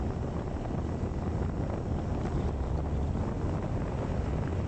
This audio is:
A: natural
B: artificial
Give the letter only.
A